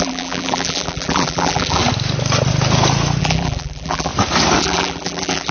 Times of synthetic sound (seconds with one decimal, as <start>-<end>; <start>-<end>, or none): 0.0-1.8; 3.2-4.1; 4.6-5.5

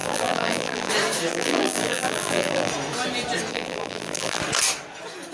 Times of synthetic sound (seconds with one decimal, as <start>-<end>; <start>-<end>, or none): 0.0-0.9; 1.3-2.7; 3.5-4.4

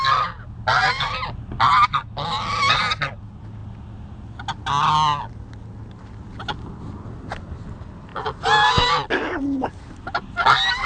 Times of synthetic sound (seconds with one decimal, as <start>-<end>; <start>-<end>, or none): none

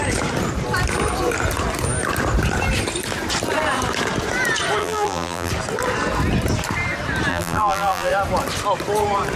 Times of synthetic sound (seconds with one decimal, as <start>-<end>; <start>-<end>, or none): 4.8-5.5; 7.3-8.1